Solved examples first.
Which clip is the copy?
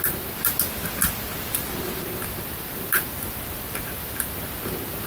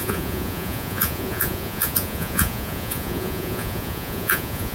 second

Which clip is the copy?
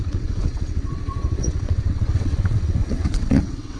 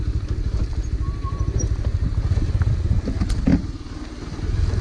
first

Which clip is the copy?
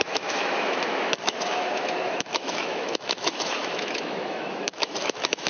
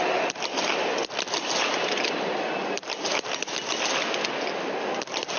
first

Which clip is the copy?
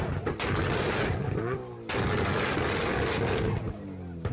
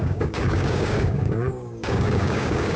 second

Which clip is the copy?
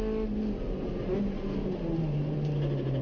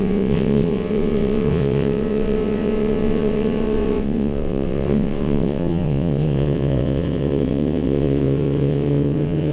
second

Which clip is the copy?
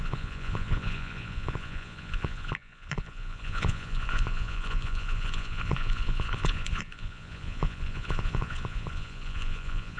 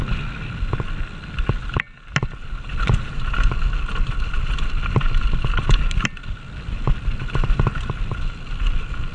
first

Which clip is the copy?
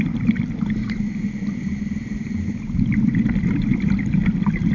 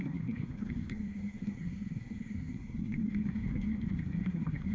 second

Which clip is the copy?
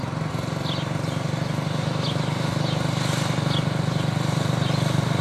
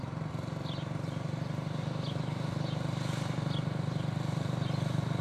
second